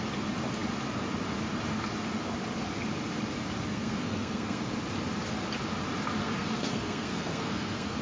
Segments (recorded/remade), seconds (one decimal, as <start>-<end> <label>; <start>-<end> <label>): 0.0-3.7 recorded; 3.7-4.6 remade; 4.6-6.2 recorded; 6.2-8.0 remade